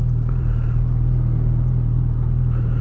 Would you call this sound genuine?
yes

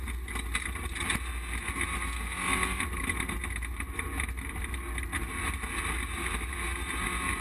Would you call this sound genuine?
yes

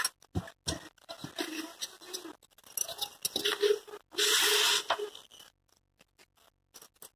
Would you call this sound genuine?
yes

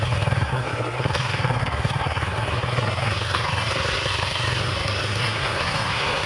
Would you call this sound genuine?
no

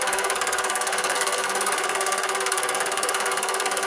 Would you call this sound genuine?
no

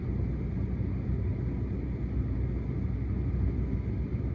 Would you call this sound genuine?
yes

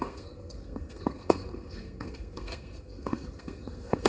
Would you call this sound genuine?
no